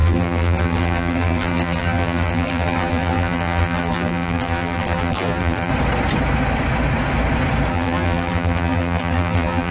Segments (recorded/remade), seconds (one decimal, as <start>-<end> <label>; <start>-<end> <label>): 0.0-5.7 remade; 5.7-7.7 recorded; 7.7-9.7 remade